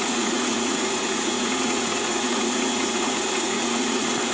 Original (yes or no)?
no